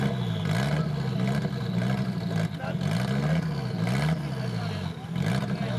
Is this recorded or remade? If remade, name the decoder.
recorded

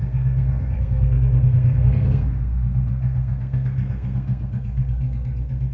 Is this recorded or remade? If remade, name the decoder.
remade, codec, SNAC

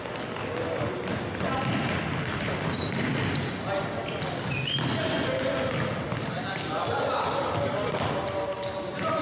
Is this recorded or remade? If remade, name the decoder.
recorded